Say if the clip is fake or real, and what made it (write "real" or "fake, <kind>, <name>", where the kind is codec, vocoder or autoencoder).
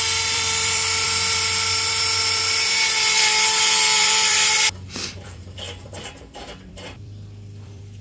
fake, vocoder, BigVGAN v2